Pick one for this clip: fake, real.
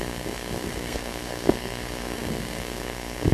fake